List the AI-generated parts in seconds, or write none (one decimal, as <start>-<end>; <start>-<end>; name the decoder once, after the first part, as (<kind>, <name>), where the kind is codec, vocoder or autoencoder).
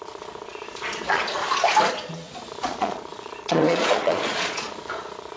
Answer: 0.0-1.4 (vocoder, Vocos); 1.9-5.4